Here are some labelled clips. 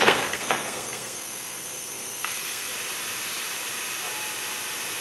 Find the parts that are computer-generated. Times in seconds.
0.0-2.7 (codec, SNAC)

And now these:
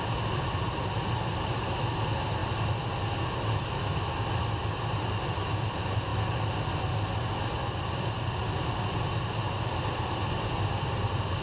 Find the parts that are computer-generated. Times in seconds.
none